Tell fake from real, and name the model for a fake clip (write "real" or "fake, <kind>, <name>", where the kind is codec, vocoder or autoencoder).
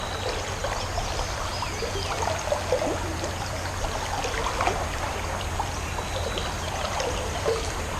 real